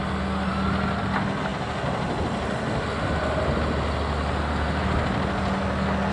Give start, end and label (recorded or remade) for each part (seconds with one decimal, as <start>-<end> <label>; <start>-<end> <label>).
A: 0.0-6.1 recorded